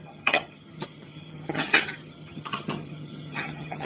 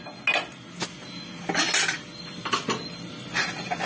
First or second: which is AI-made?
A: first